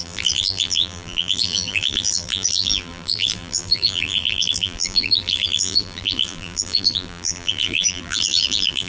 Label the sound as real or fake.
fake